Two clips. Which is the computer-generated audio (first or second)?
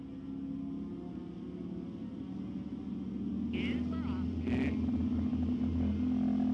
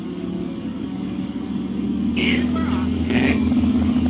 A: second